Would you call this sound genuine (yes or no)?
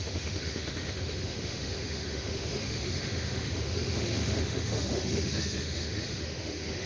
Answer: no